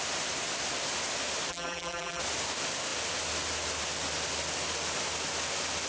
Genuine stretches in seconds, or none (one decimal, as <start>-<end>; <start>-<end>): 0.0-1.5; 2.2-5.9